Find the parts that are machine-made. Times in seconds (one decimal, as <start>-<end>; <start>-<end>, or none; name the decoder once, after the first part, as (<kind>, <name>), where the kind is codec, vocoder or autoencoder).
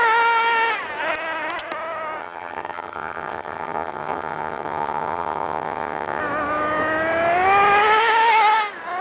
2.2-6.2 (vocoder, HiFi-GAN)